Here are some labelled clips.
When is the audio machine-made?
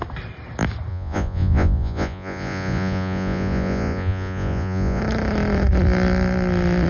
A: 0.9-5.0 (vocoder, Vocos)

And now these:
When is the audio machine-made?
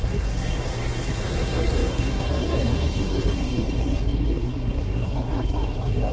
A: 0.0-6.1 (codec, SNAC)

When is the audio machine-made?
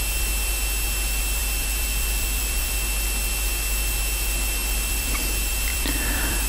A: 1.4-2.7 (vocoder, BigVGAN v2); 4.6-5.2; 5.7-6.5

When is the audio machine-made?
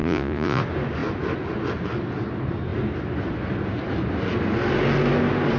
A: 0.0-0.6 (vocoder, Vocos)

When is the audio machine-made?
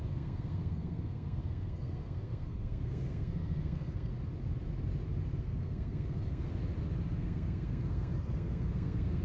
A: 0.0-4.1 (codec, SNAC); 5.4-6.6; 7.2-9.2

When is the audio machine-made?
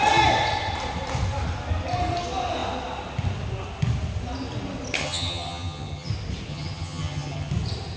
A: 5.0-6.1 (vocoder, HiFi-GAN); 6.5-7.5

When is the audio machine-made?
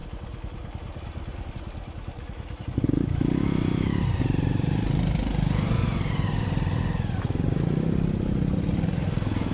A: none